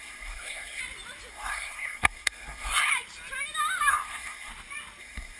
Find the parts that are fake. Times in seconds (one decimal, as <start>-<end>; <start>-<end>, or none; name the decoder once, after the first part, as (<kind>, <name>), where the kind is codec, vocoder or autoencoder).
0.0-0.8 (codec, SNAC); 1.3-2.9; 3.9-4.5; 5.0-5.4